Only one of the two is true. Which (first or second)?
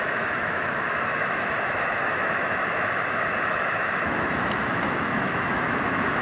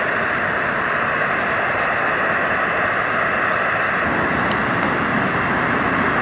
second